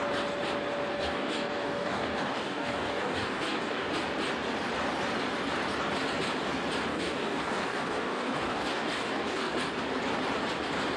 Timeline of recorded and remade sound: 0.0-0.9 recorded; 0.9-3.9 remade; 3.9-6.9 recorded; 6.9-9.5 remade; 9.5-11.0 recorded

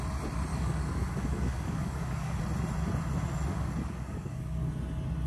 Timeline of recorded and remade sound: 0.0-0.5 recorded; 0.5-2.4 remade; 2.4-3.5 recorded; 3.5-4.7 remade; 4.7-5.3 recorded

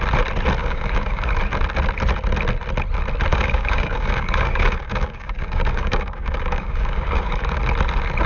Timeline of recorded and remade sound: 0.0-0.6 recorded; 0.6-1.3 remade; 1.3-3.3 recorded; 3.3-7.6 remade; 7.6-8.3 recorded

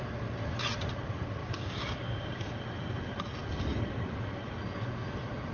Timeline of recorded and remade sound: 0.0-1.4 recorded; 1.4-2.5 remade; 2.5-5.5 recorded

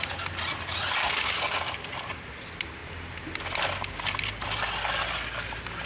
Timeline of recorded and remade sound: 0.0-1.0 recorded; 1.0-1.9 remade; 1.9-5.9 recorded

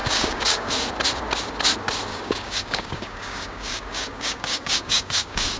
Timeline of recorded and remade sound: 0.0-0.7 remade; 0.7-2.1 recorded; 2.1-5.6 remade